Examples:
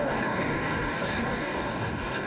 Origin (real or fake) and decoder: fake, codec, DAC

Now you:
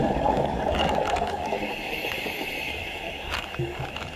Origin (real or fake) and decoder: fake, codec, DAC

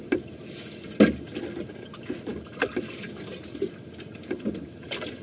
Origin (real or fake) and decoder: real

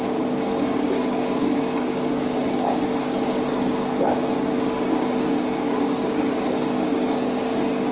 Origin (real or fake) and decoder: fake, codec, DAC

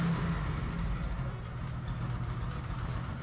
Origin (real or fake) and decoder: real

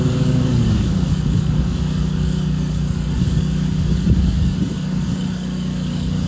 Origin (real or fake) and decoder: fake, codec, DAC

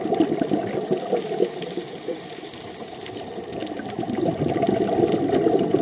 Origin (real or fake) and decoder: real